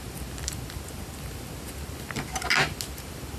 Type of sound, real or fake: real